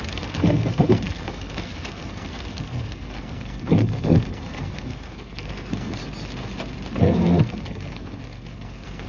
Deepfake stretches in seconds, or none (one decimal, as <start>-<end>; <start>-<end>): 0.0-6.0; 7.0-9.1